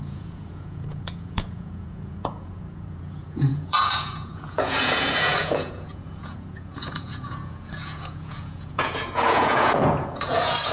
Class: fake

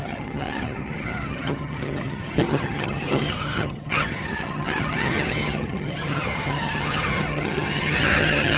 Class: fake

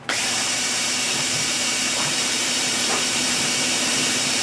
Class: fake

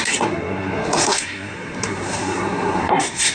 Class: fake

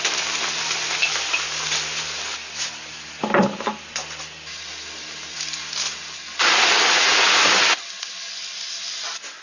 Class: real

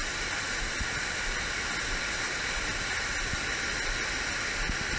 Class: real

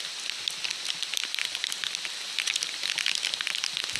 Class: real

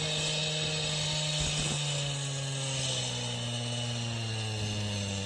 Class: real